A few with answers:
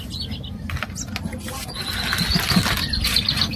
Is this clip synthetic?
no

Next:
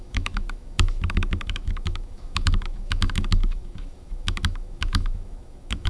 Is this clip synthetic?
yes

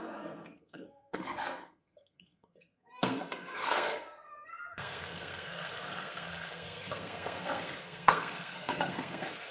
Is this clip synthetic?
yes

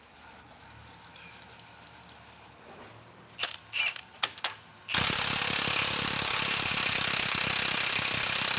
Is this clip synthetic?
no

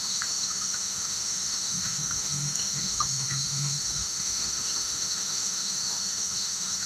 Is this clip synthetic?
yes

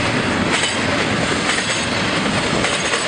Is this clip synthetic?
no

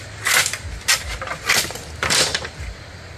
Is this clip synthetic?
no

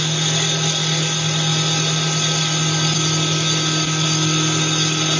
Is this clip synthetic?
no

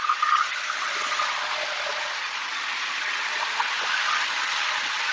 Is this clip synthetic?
yes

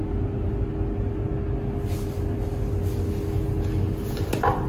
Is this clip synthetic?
no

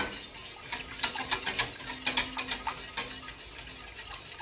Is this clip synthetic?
no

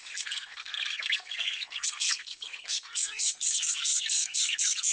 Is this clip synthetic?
yes